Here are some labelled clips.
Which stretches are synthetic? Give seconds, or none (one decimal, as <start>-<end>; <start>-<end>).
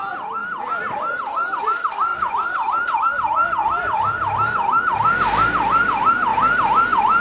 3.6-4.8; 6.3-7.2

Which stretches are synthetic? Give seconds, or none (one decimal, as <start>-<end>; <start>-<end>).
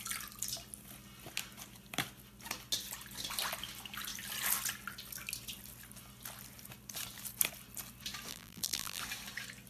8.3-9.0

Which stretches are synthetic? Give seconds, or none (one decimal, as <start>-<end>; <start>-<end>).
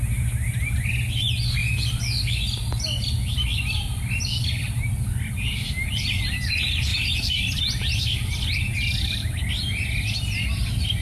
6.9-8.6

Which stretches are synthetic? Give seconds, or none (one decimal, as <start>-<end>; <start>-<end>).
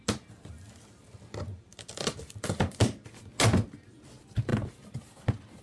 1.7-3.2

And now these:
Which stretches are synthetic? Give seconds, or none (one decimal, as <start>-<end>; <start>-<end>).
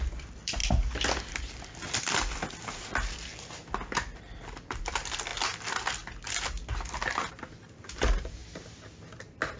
0.0-0.6; 1.3-3.3; 4.2-5.3; 7.3-8.4; 9.2-9.6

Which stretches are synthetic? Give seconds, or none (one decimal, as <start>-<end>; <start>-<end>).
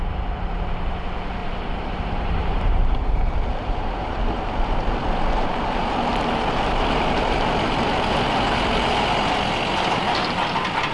1.4-4.2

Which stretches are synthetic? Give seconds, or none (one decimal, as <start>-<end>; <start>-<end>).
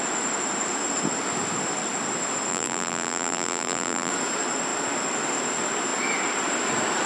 2.5-4.1